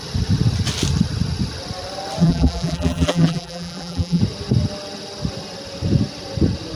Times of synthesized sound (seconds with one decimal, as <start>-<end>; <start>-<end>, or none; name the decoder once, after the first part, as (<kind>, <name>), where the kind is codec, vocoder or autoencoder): 2.2-4.2 (vocoder, BigVGAN v2)